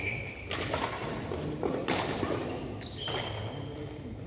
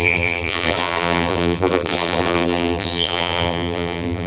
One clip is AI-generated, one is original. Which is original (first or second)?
first